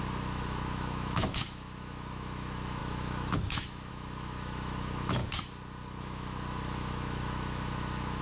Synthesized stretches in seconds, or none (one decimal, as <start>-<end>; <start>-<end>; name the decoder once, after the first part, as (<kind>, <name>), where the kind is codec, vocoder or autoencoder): 0.0-5.2 (autoencoder, DAC-VAE); 6.0-8.2